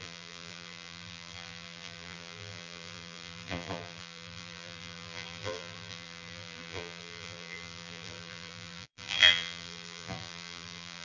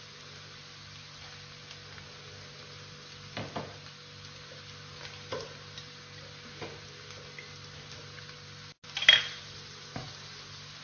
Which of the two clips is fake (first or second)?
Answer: first